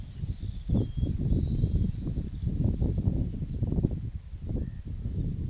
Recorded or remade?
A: recorded